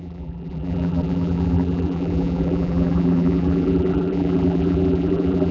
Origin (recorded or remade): remade